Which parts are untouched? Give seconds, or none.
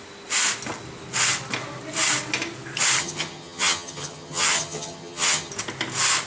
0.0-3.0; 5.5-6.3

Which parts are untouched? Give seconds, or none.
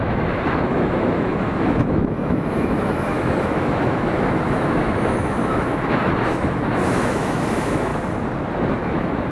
7.9-8.8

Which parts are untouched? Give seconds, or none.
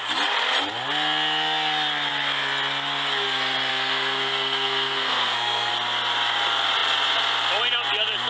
0.0-3.7; 5.7-8.3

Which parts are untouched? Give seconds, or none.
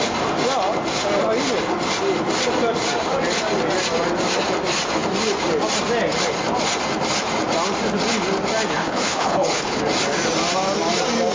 0.0-8.8; 9.8-11.3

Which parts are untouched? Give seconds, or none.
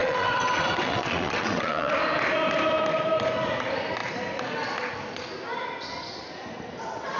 1.9-7.2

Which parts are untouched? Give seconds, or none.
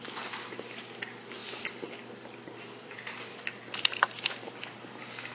0.0-5.3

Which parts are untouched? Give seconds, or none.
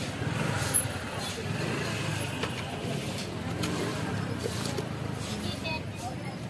0.0-0.6; 1.3-2.1; 6.0-6.5